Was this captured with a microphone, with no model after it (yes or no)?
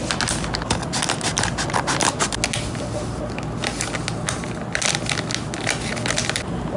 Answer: yes